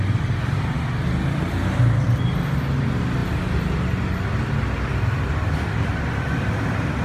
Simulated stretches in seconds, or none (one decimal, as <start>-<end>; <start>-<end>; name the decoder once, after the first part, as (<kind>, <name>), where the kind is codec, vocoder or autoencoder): none